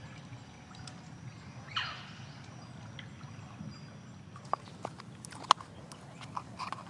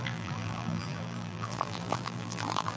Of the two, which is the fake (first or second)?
second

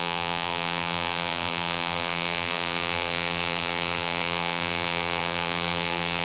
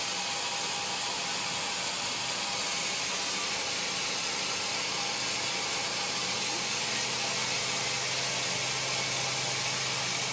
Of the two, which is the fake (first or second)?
first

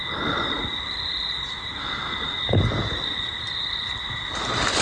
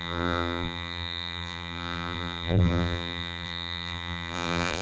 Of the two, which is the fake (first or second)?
second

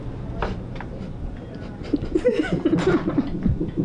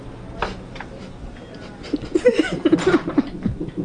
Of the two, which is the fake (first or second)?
first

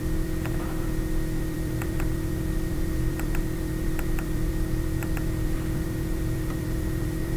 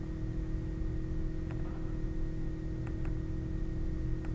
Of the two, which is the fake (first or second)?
first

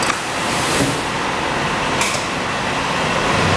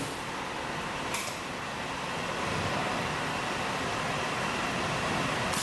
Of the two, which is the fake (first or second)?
second